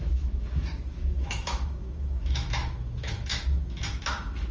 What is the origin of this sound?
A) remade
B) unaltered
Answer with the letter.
A